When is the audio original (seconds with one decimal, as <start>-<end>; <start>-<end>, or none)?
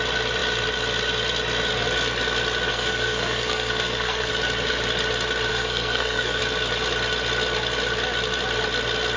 0.0-2.7; 4.3-5.5; 6.4-9.2